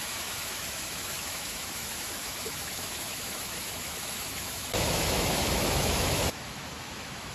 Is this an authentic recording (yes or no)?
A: no